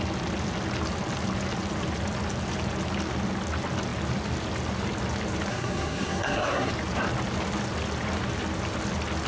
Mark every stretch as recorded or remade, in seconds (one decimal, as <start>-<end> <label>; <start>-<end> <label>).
0.0-5.5 recorded; 5.5-6.7 remade; 6.7-9.3 recorded